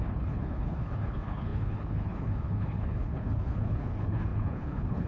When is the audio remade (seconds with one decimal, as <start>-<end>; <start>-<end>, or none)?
0.0-5.1